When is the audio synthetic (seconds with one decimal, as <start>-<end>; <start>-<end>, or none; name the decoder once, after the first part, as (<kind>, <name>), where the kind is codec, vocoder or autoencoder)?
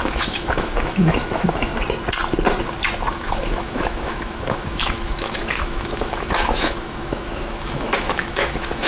0.0-1.7 (autoencoder, DAC-VAE); 3.1-8.9